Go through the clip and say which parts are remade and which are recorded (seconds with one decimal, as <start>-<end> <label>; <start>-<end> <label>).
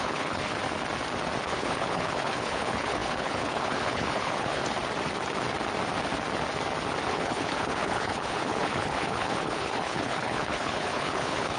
0.0-0.6 remade; 0.6-1.4 recorded; 1.4-4.6 remade; 4.6-7.1 recorded; 7.1-11.6 remade